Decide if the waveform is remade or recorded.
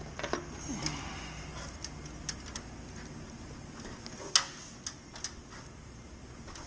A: recorded